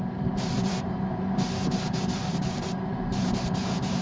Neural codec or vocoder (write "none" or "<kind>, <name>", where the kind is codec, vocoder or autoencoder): vocoder, BigVGAN v2